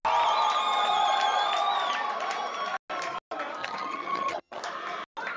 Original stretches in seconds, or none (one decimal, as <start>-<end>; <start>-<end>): 0.0-3.6; 4.6-5.4

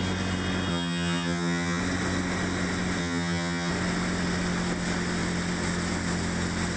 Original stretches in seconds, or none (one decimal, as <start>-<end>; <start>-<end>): 0.0-0.7; 1.8-3.0; 3.7-6.8

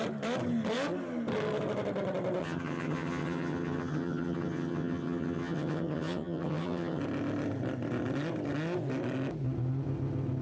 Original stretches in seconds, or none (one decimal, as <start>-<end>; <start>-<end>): 0.0-2.4; 7.0-10.4

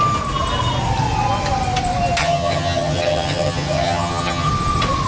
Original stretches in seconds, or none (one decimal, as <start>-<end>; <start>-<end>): 0.0-2.2; 4.5-5.1

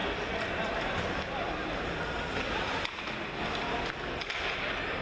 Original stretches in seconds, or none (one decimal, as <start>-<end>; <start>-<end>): 0.0-5.0

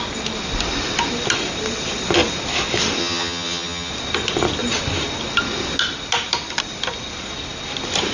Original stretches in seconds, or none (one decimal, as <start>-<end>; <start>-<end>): 0.0-3.0; 3.9-8.1

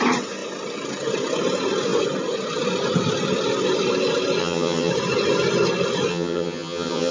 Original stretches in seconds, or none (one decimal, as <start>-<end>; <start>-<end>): 0.0-4.4; 4.9-6.1